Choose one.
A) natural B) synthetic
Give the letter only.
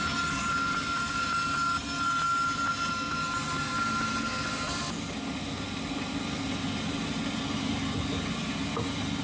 A